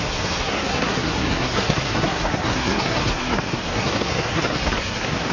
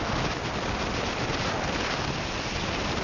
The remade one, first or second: first